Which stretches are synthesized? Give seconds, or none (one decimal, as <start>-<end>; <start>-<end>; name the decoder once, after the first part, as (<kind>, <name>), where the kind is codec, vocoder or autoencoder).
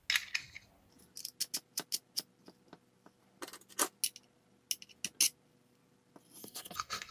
6.4-7.1 (codec, SNAC)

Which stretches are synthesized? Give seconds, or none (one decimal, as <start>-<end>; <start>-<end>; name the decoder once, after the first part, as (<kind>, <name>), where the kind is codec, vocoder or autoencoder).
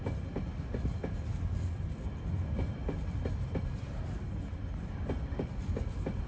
none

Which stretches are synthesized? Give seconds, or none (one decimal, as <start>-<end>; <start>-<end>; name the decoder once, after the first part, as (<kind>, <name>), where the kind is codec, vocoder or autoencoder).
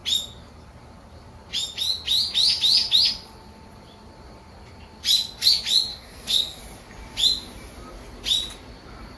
5.9-6.6 (codec, SNAC)